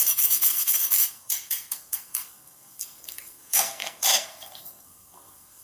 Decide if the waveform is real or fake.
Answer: fake